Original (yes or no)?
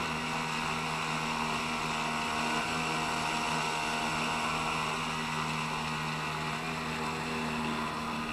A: yes